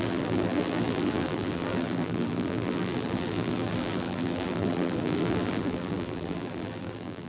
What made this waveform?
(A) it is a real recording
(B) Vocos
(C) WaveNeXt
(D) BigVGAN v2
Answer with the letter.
D